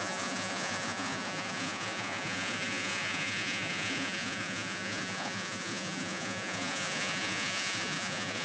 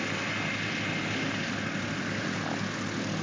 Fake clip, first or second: first